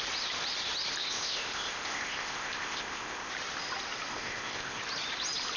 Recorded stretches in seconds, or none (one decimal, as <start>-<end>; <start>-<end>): 0.0-1.0; 3.3-4.1; 4.8-5.6

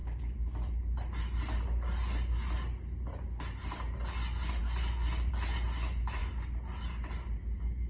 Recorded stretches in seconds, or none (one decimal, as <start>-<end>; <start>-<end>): 0.0-7.9

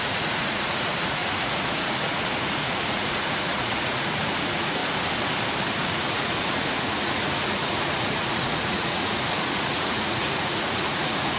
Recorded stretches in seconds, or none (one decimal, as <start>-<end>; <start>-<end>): 4.8-5.9

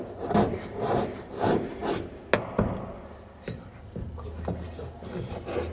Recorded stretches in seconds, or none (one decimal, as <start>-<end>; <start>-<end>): 1.8-5.2

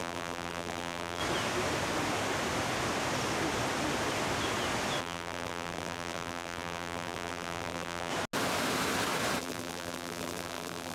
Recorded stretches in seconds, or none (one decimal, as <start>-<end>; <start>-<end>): 1.2-5.0; 8.1-9.4

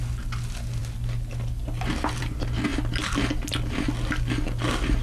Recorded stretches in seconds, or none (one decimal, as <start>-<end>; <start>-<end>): 0.0-5.0